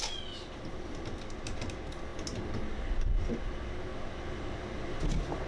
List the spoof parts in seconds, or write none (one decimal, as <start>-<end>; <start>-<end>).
none